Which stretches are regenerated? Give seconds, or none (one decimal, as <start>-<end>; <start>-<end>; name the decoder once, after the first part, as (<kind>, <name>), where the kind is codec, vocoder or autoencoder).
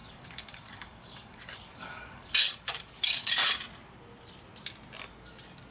0.0-3.3 (codec, DAC)